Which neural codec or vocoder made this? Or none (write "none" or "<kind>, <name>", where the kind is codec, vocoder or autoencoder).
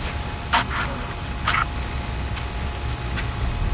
none